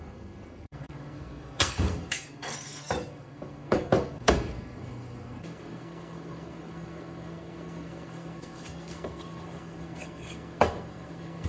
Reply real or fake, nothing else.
fake